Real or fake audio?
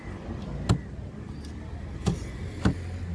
real